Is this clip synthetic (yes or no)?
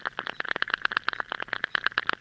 no